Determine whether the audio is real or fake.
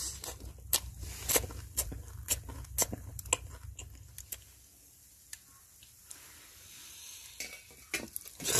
real